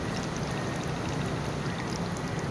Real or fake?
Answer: real